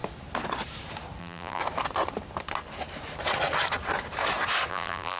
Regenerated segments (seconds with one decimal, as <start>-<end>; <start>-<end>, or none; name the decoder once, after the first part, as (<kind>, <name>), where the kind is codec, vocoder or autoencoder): 1.2-1.6 (vocoder, BigVGAN v2); 4.7-5.2